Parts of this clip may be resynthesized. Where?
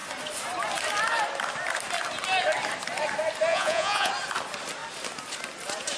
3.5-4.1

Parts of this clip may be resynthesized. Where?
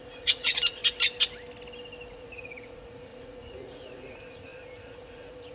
0.0-0.8; 2.1-5.5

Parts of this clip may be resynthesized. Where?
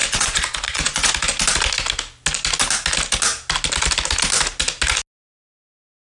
0.0-1.1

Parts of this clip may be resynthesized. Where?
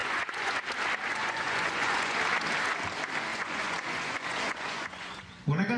0.0-0.6; 1.1-2.2; 3.3-5.8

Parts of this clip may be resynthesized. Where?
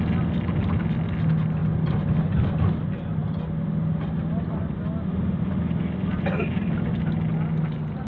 none